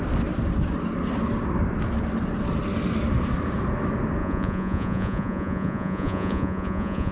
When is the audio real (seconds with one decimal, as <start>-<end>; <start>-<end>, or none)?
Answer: 0.0-4.2